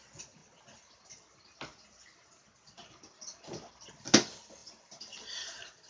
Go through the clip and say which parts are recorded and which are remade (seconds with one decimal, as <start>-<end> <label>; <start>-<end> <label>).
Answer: 0.0-5.9 recorded